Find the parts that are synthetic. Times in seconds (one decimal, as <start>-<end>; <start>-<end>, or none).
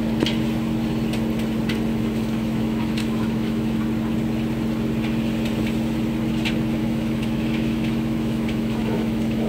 1.9-3.8; 6.8-9.5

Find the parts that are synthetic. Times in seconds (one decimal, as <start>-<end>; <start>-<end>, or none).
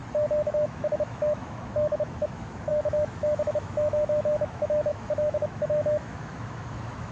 0.5-7.1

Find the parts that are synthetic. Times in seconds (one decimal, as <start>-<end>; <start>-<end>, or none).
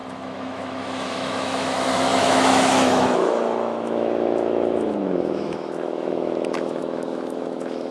0.0-7.9